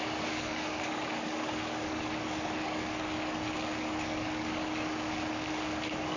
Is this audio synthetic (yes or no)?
yes